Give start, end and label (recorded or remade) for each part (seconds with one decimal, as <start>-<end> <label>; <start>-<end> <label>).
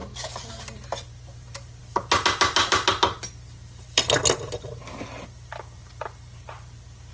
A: 0.0-7.1 recorded